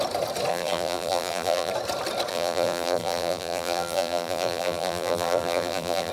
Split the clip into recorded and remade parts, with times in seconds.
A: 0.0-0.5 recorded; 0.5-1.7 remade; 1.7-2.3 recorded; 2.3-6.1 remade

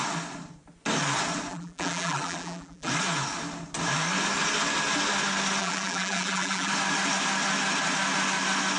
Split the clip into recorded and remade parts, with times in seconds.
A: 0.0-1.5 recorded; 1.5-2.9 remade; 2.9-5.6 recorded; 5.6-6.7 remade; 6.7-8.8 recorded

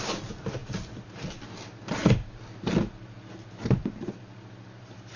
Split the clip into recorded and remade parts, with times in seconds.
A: 0.0-5.2 recorded

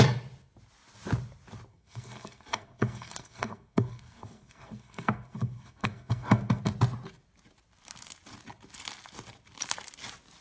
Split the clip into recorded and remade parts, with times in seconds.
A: 0.0-1.7 recorded; 1.7-6.7 remade; 6.7-10.4 recorded

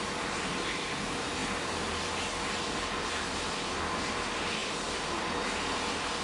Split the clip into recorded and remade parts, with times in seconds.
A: 0.0-6.2 recorded

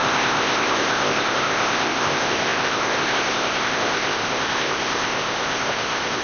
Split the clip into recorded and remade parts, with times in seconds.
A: 0.0-6.2 remade

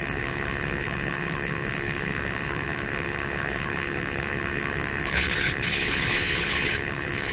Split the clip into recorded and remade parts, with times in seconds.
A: 0.0-7.3 remade